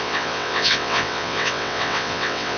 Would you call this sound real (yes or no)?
no